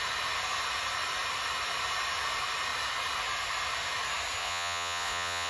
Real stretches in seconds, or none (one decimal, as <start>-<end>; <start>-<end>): 0.0-4.4